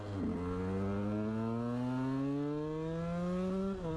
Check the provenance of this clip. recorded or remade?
recorded